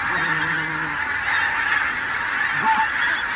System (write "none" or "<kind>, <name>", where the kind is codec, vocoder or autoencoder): none